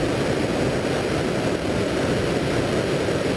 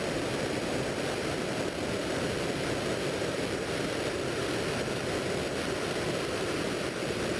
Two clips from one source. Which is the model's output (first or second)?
second